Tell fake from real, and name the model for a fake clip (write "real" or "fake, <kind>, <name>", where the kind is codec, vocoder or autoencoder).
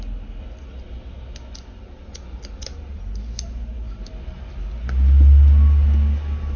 real